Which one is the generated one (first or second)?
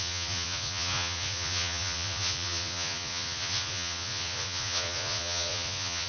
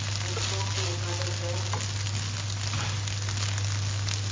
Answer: first